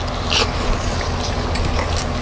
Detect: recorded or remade recorded